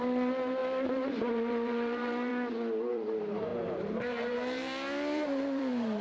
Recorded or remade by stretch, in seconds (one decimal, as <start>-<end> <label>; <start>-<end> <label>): 0.0-2.3 remade; 2.3-2.9 recorded; 2.9-6.0 remade